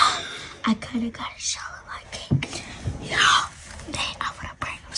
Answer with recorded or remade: recorded